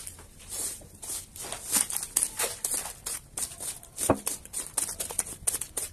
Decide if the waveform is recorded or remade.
recorded